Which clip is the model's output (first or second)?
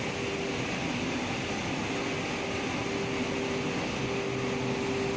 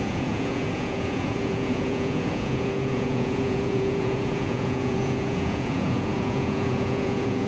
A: second